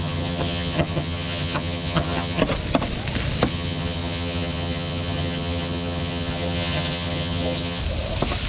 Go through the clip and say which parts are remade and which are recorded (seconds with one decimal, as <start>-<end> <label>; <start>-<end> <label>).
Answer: 0.0-2.4 remade; 2.4-3.5 recorded; 3.5-7.8 remade; 7.8-8.5 recorded